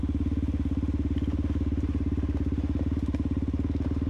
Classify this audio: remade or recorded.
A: recorded